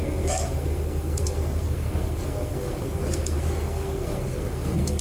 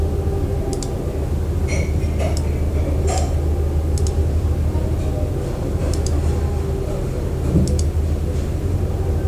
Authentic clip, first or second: second